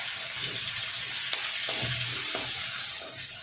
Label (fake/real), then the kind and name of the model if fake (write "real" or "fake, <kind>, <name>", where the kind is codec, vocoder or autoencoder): real